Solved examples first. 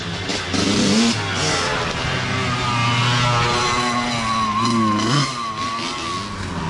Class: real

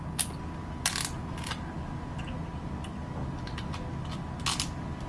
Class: real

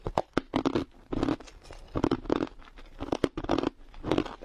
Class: real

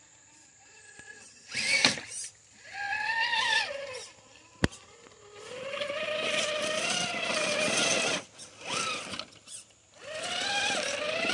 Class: real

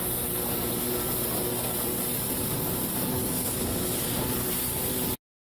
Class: real